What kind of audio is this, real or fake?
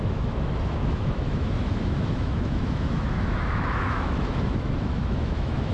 fake